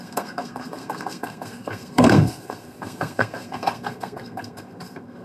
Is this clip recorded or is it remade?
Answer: remade